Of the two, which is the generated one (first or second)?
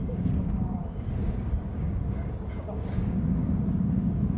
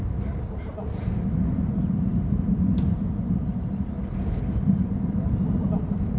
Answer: first